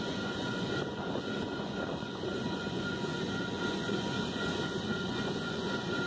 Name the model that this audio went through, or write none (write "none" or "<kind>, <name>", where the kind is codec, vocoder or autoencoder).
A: vocoder, Vocos